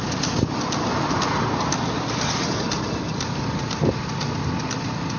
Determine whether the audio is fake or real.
real